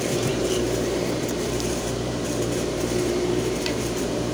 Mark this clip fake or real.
fake